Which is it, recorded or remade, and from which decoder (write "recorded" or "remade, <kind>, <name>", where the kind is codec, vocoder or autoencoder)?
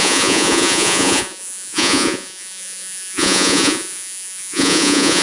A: remade, vocoder, Vocos